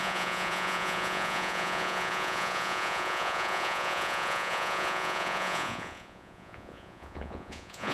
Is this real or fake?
fake